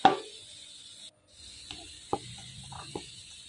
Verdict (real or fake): fake